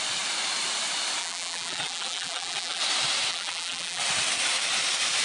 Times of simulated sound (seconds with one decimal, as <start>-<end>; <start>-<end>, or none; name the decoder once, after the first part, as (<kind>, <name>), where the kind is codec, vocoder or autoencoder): 1.2-2.8 (vocoder, BigVGAN v2); 3.3-4.0